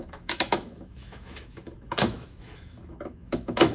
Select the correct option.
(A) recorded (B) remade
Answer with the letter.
B